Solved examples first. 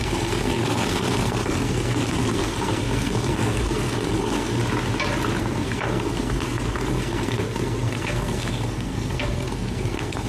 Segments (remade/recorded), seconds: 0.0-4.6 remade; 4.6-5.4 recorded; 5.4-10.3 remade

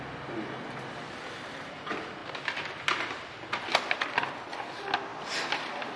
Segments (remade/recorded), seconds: 0.0-6.0 recorded